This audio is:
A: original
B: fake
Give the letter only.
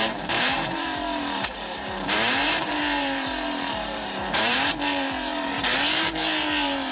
B